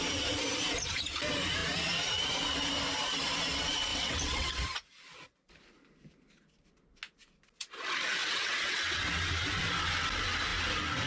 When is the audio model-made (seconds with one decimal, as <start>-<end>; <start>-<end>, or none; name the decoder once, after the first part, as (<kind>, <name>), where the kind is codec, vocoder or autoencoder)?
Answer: 3.9-4.6 (vocoder, WaveNeXt); 8.2-9.0